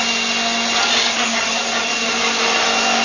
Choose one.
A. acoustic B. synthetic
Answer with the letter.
A